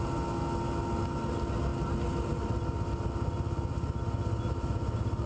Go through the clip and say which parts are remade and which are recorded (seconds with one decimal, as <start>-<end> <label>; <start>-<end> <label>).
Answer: 0.0-5.3 recorded